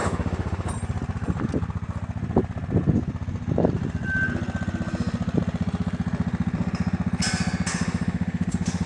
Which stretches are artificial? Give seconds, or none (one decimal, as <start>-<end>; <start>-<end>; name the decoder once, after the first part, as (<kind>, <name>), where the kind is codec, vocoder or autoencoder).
0.0-0.7 (autoencoder, DAC-VAE); 7.7-8.9